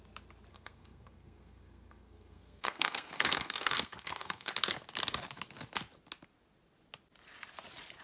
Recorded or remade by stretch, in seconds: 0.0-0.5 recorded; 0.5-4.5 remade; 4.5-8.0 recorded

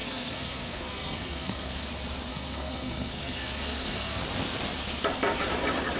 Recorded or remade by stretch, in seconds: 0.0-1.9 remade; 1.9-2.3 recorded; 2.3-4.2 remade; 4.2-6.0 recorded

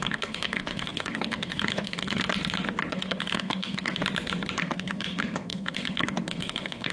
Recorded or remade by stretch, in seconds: 0.0-2.2 remade; 2.2-2.9 recorded; 2.9-4.0 remade; 4.0-4.6 recorded; 4.6-6.9 remade

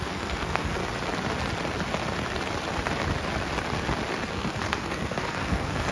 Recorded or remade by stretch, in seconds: 0.0-0.8 remade; 0.8-4.3 recorded; 4.3-5.9 remade

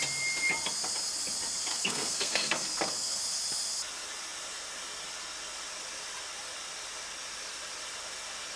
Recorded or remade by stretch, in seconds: 0.0-1.7 recorded; 1.7-3.2 remade; 3.2-8.6 recorded